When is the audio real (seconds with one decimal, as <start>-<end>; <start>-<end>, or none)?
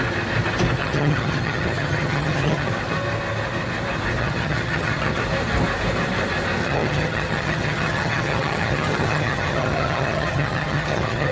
0.0-0.8; 2.7-4.2; 5.2-6.6